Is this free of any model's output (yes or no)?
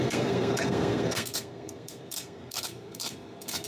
no